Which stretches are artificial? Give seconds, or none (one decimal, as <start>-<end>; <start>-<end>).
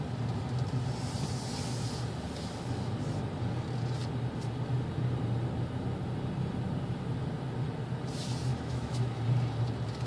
8.5-9.2